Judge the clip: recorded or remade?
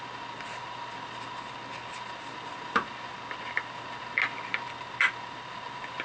recorded